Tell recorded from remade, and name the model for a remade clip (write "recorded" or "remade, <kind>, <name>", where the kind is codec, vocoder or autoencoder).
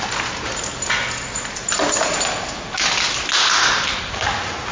recorded